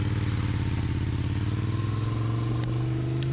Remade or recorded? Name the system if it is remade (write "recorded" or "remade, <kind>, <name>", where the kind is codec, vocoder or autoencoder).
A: recorded